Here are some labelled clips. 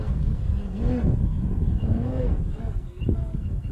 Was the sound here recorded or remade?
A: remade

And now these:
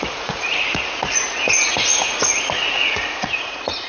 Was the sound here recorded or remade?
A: remade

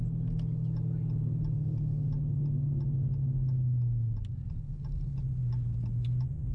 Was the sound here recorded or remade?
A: recorded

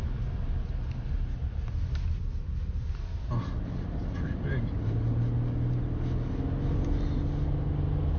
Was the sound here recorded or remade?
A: recorded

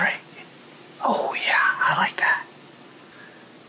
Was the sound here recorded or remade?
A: recorded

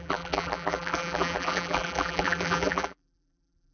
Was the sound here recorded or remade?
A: remade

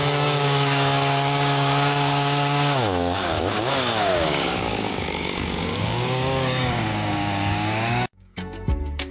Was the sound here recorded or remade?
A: remade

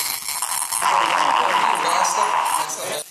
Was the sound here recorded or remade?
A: recorded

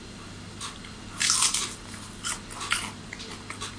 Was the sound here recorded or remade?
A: recorded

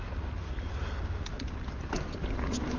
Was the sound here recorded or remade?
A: recorded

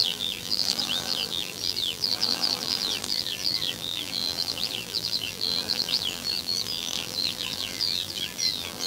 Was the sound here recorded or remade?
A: remade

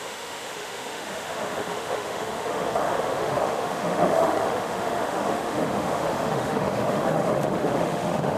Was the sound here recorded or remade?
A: remade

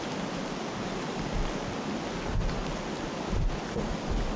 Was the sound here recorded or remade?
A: recorded